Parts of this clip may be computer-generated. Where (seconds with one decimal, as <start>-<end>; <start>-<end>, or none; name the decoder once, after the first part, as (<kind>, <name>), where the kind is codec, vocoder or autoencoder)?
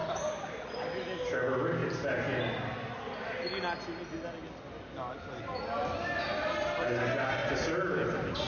none